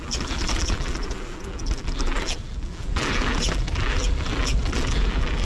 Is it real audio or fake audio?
fake